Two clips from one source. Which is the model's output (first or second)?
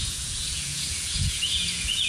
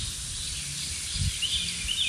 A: first